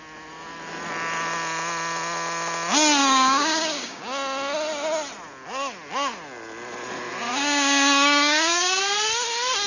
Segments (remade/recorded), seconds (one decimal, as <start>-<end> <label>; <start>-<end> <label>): 0.0-3.0 recorded; 3.0-4.0 remade; 4.0-7.3 recorded; 7.3-8.8 remade; 8.8-9.7 recorded